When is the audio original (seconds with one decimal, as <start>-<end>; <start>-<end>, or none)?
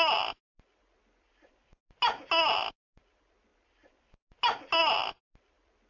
0.0-5.9